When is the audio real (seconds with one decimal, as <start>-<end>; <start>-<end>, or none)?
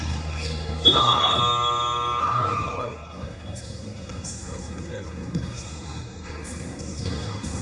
1.4-2.2